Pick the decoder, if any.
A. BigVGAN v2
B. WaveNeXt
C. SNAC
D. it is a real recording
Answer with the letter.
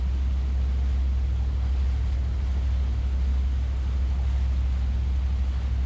D